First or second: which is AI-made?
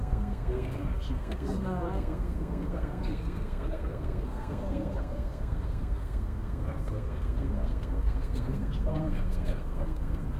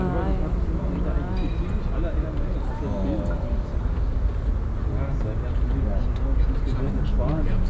first